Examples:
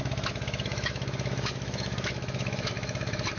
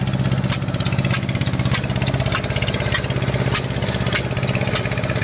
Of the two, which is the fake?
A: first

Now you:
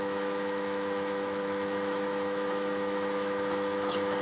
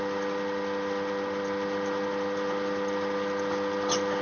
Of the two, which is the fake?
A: first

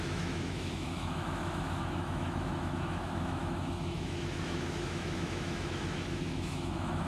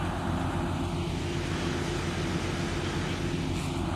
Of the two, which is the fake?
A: first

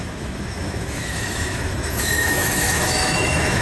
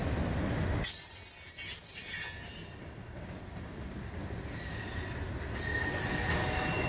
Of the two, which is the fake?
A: first